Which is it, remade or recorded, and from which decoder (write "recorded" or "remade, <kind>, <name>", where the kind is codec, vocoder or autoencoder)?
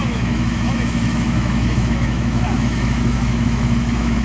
remade, autoencoder, DAC-VAE